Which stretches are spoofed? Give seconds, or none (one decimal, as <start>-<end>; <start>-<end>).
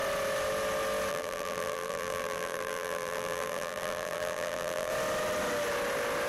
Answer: 1.1-4.9